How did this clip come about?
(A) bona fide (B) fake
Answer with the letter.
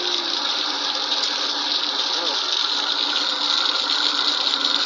A